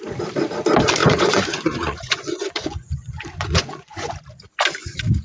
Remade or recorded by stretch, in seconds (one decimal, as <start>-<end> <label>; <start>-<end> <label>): 0.0-1.0 recorded; 1.0-4.1 remade; 4.1-5.2 recorded